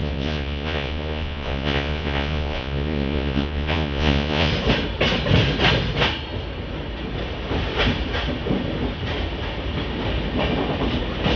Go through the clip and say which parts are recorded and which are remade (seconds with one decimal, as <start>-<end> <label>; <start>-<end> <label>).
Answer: 0.0-4.5 remade; 4.5-11.4 recorded